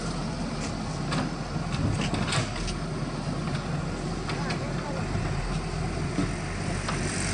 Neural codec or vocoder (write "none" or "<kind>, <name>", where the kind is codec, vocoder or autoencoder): none